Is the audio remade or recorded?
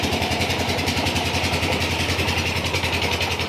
remade